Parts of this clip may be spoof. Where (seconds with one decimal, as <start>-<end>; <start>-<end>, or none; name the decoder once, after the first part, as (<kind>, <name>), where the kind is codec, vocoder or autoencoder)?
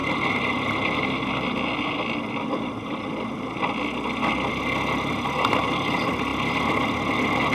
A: none